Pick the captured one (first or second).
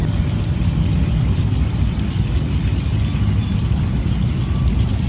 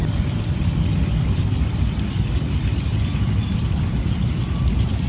first